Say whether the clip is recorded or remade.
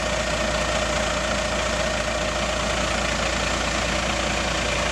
recorded